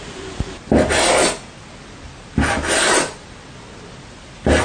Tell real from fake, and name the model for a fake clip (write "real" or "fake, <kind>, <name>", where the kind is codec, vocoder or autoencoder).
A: real